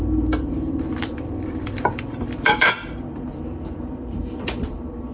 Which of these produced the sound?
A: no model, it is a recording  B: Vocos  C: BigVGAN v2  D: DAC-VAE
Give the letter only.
C